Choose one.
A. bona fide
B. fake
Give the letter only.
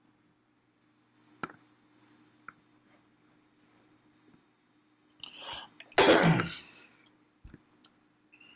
A